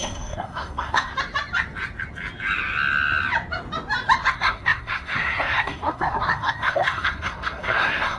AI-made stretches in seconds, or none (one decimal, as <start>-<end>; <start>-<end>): 0.0-1.1; 4.3-8.2